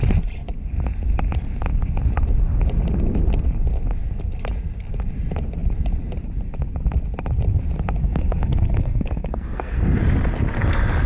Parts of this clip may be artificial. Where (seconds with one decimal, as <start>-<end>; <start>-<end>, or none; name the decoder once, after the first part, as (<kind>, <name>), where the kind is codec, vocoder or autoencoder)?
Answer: 8.0-10.0 (codec, SNAC)